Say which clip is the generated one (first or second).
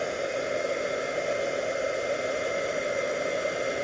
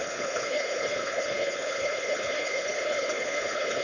second